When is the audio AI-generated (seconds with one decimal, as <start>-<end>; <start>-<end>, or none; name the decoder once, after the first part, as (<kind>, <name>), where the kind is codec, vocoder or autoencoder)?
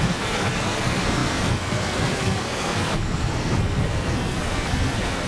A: 0.0-5.3 (codec, SNAC)